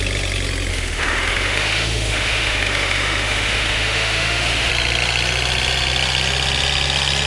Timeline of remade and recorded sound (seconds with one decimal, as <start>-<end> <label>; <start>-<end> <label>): 0.0-0.7 recorded; 0.7-4.7 remade; 4.7-7.3 recorded